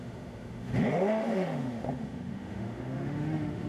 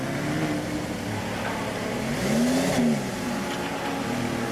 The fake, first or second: first